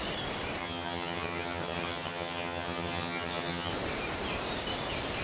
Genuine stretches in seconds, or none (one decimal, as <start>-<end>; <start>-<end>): 0.0-0.6; 3.7-5.2